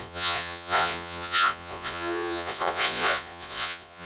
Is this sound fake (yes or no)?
yes